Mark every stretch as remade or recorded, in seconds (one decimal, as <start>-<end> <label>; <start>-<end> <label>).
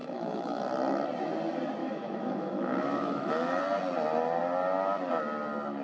0.0-0.6 remade; 0.6-1.8 recorded; 1.8-3.6 remade; 3.6-5.8 recorded